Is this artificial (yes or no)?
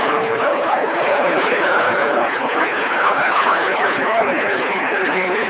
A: yes